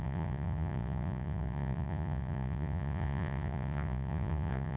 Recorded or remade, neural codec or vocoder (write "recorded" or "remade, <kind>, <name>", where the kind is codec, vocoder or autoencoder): remade, vocoder, Vocos